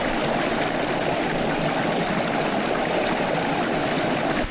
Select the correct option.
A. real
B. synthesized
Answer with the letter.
A